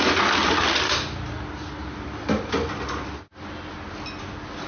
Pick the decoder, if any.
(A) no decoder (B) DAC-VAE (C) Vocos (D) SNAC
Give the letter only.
A